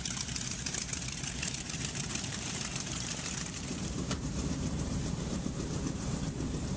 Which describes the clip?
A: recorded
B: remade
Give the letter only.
B